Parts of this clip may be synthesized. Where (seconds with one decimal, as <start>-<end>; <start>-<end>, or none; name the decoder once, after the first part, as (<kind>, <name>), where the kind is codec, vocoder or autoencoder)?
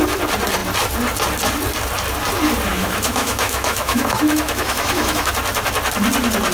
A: 2.7-5.3 (autoencoder, DAC-VAE)